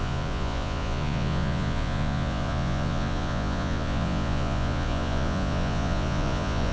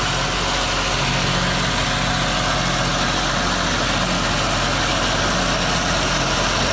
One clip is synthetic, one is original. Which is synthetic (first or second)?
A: first